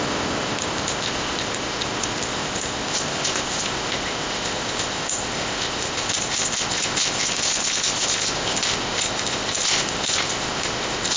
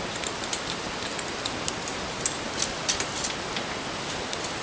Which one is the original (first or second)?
second